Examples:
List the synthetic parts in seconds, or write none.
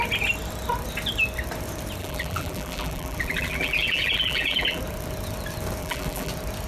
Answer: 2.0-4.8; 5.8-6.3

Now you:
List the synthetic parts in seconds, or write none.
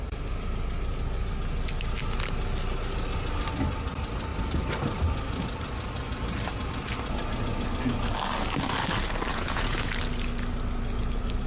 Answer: 9.3-9.9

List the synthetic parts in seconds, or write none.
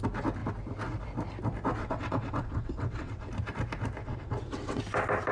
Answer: 1.8-3.3; 4.0-4.8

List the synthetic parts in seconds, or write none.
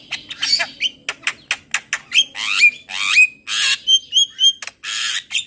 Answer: none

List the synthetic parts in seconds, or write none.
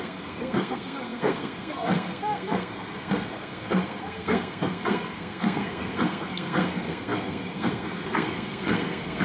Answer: 0.0-9.2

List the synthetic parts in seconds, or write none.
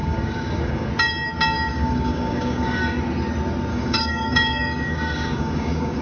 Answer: 0.0-0.9; 1.7-2.8; 3.7-6.0